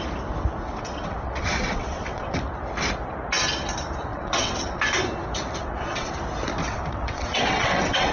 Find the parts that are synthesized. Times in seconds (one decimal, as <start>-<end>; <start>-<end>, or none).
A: 0.7-2.4; 4.1-4.8; 5.6-6.1; 6.6-8.1